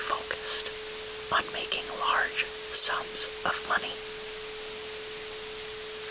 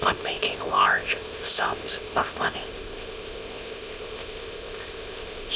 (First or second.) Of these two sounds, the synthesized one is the second